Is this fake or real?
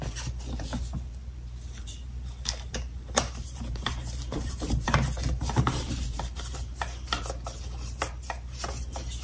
fake